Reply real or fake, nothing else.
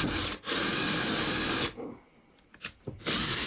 real